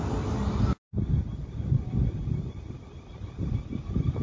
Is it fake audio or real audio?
real